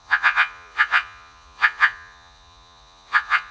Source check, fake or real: fake